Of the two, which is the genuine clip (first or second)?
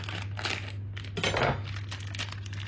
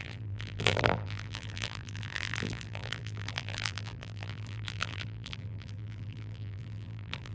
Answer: first